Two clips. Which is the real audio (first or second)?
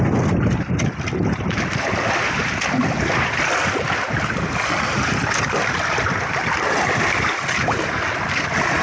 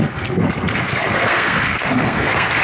first